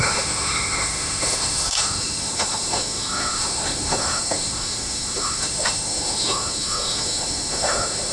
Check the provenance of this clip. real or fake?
fake